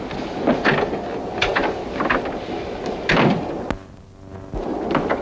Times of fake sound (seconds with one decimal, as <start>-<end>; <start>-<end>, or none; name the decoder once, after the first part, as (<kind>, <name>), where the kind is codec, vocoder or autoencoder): none